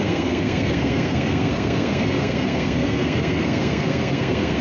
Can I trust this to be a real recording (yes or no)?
no